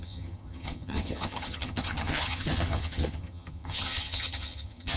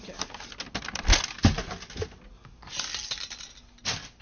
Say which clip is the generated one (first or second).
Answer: first